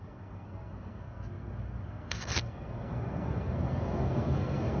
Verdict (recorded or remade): remade